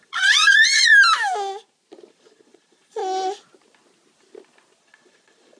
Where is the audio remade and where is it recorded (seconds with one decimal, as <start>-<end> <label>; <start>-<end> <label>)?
0.0-0.9 remade; 0.9-2.1 recorded; 2.1-3.0 remade; 3.0-4.8 recorded; 4.8-5.6 remade